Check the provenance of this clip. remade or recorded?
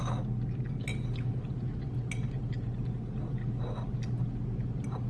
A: recorded